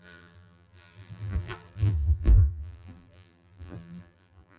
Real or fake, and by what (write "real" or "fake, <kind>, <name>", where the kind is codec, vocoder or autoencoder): fake, vocoder, BigVGAN v2